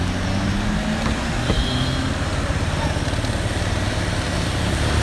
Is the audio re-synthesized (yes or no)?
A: no